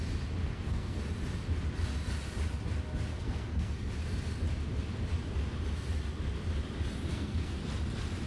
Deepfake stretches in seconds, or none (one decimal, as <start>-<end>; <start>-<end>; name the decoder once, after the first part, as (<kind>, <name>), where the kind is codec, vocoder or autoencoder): 0.4-1.0 (codec, SNAC); 3.1-3.9; 7.1-7.6

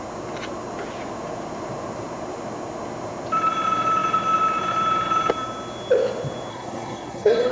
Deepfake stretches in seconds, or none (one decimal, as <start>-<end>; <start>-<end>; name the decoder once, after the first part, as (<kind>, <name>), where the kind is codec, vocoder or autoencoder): 6.5-7.5 (codec, SNAC)